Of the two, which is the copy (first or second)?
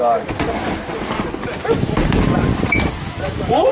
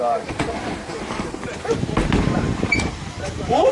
second